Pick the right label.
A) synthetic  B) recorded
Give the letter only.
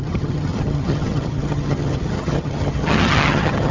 A